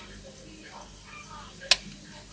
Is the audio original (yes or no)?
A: yes